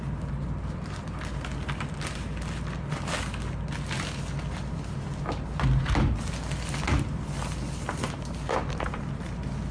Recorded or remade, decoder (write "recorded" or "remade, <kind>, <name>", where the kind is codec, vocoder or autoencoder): recorded